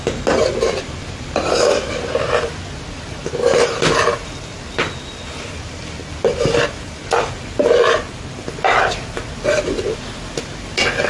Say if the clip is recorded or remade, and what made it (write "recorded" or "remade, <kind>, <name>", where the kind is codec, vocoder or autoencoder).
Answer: recorded